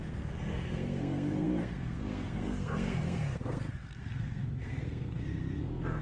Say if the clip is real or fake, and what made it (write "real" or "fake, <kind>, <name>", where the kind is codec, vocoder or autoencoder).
fake, codec, SNAC